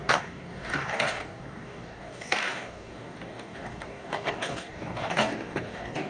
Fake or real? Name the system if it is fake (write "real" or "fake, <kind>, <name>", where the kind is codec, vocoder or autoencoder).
fake, codec, DAC